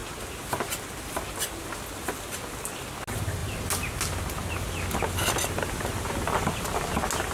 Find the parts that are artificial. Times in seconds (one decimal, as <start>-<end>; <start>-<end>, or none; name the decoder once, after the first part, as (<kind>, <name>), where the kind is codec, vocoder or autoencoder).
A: none